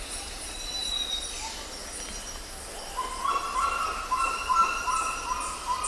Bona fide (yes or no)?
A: yes